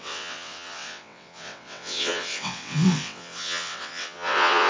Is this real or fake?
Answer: fake